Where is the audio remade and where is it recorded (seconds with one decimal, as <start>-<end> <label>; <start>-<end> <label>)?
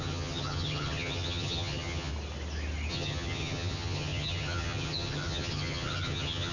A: 0.0-2.1 remade; 2.1-2.9 recorded; 2.9-6.5 remade